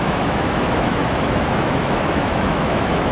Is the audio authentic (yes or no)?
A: no